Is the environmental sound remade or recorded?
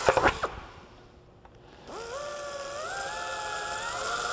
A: recorded